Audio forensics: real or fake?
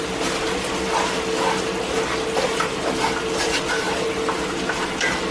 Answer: real